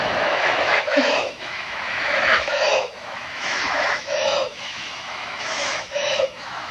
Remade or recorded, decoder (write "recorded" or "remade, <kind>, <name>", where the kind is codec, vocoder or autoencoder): remade, autoencoder, DAC-VAE